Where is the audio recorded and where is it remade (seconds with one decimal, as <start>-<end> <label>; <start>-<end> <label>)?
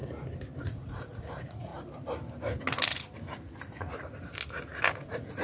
0.0-0.6 recorded; 0.6-1.7 remade; 1.7-4.9 recorded; 4.9-5.4 remade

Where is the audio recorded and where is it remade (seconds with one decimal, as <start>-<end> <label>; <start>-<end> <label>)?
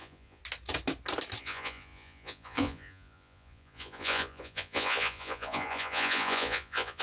0.0-0.4 remade; 0.4-1.4 recorded; 1.4-7.0 remade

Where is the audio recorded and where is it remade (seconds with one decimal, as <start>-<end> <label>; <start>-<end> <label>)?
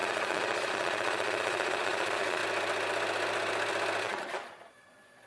0.0-2.4 remade; 2.4-4.0 recorded; 4.0-5.3 remade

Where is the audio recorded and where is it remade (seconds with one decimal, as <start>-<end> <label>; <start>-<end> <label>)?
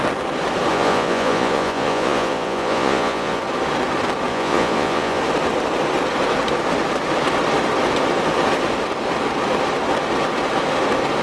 0.0-0.7 recorded; 0.7-3.4 remade; 3.4-4.3 recorded; 4.3-5.2 remade; 5.2-11.2 recorded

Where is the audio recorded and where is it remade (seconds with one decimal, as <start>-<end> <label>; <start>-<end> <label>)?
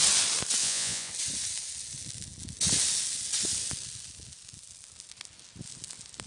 0.0-0.6 recorded; 0.6-1.1 remade; 1.1-6.3 recorded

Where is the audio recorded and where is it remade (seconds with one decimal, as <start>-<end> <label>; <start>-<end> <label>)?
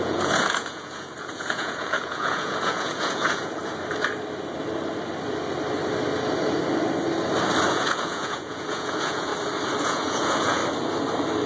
0.0-3.6 remade; 3.6-7.7 recorded; 7.7-9.3 remade; 9.3-9.8 recorded; 9.8-10.6 remade; 10.6-11.5 recorded